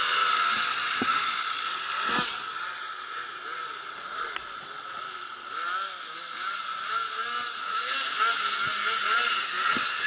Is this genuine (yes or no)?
yes